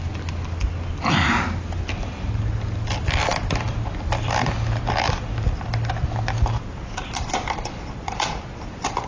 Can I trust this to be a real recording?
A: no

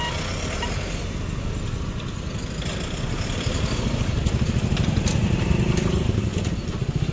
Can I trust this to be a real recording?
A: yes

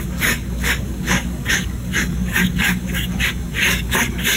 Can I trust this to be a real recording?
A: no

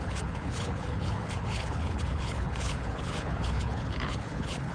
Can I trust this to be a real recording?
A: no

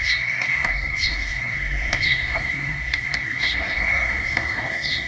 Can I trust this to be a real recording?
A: no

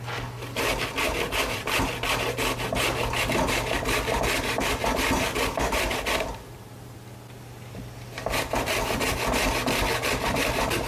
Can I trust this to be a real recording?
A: yes